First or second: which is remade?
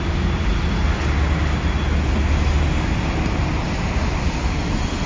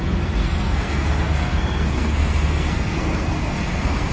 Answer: second